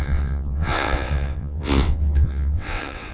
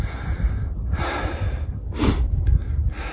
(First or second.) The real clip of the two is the second